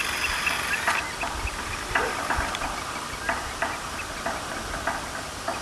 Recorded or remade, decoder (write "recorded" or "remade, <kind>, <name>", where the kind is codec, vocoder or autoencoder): recorded